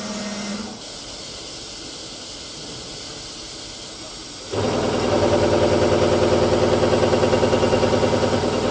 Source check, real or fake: real